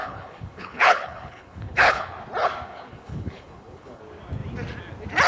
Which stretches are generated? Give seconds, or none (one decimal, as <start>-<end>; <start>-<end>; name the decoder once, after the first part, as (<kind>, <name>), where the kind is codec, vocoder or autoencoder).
0.0-2.2 (codec, HILCodec); 2.9-4.0